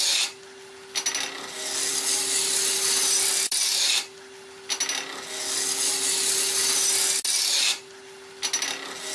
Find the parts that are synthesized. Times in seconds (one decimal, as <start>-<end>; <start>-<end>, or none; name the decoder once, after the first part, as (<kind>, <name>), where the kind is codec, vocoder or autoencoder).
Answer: none